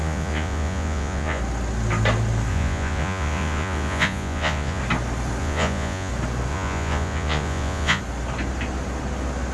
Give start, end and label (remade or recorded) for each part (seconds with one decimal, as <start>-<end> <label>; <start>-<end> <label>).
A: 0.0-1.4 remade; 1.4-2.5 recorded; 2.5-4.8 remade; 4.8-5.4 recorded; 5.4-6.1 remade; 6.1-6.5 recorded; 6.5-8.0 remade; 8.0-9.5 recorded